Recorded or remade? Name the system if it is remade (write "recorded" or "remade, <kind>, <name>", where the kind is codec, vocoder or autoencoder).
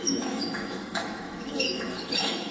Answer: remade, autoencoder, DAC-VAE